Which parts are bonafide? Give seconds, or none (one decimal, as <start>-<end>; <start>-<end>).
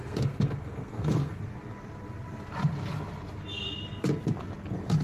1.4-5.0